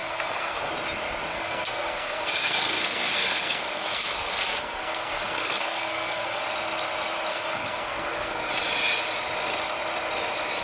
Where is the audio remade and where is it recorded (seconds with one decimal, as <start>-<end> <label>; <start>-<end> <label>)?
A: 0.0-0.7 remade; 0.7-1.3 recorded; 1.3-6.4 remade; 6.4-7.3 recorded; 7.3-8.5 remade; 8.5-10.6 recorded